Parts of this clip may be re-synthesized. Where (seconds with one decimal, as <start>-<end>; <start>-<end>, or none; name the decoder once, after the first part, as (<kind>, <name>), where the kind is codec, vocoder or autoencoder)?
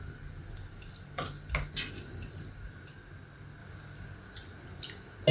none